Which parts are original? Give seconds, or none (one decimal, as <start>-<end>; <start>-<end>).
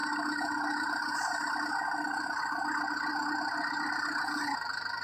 0.0-5.0